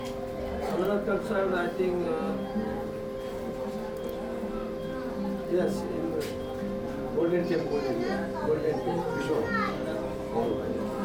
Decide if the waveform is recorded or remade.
recorded